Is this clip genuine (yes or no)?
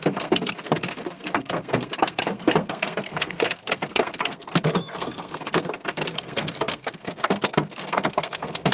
no